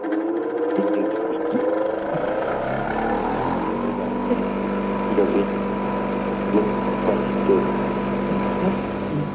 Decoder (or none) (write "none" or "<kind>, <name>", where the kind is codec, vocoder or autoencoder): none